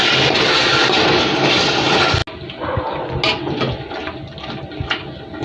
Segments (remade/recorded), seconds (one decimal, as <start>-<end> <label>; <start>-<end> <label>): 0.0-5.4 recorded